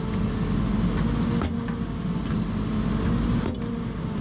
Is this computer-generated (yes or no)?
no